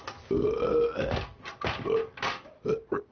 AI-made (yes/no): no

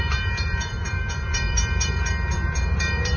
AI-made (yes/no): yes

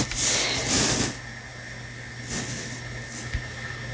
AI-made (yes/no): no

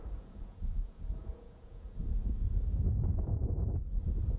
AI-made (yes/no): yes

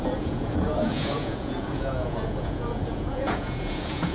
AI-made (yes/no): yes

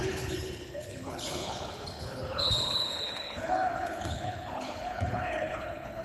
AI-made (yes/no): yes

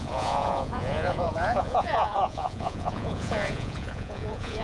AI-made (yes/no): yes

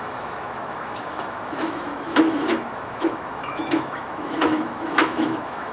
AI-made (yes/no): yes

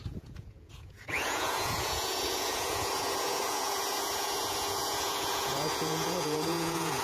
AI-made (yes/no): yes